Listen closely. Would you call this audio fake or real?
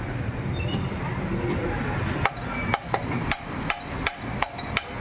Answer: real